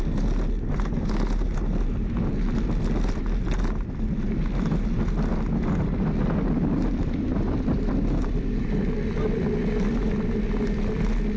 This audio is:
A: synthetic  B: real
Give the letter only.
B